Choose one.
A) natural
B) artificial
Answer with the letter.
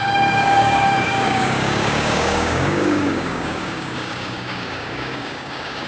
B